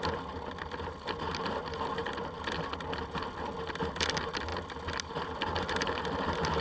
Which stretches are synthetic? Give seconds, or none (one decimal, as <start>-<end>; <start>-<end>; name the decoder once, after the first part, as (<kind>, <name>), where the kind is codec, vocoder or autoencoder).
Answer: none